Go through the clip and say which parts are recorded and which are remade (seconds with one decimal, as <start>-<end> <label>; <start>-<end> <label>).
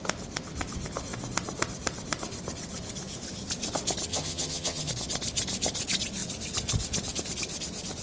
0.0-4.1 recorded; 4.1-4.9 remade; 4.9-8.0 recorded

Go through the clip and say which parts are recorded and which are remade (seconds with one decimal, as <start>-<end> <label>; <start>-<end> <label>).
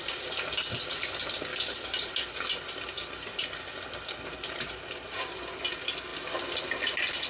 0.0-7.3 recorded